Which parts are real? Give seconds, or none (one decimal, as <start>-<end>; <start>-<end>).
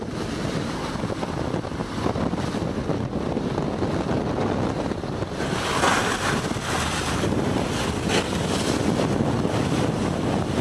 0.0-10.6